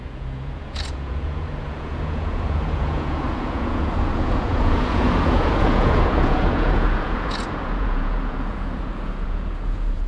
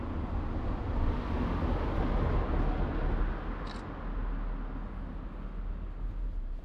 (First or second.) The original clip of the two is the second